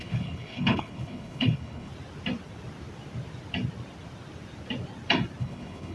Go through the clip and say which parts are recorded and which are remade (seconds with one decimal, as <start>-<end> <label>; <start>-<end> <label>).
0.0-1.9 remade; 1.9-5.4 recorded; 5.4-5.9 remade